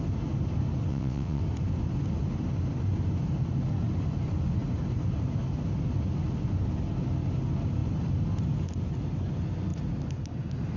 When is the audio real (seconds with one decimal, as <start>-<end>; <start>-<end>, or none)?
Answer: 0.0-0.9; 1.4-10.8